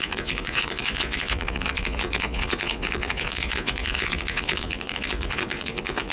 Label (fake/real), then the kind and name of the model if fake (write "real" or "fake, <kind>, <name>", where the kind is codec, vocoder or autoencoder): fake, vocoder, Vocos